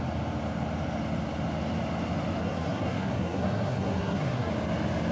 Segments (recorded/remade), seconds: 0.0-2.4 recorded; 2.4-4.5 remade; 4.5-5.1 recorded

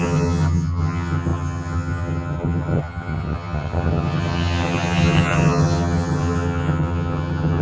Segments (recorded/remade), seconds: 0.0-7.6 remade